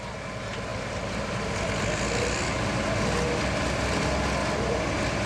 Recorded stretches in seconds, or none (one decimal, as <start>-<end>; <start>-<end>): 0.0-5.3